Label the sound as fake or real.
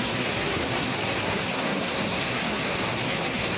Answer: fake